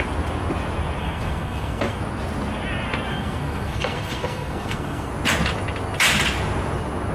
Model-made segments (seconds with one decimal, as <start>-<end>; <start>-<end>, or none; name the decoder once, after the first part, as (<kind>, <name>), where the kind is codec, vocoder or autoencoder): 1.0-2.0 (codec, SNAC); 3.1-5.1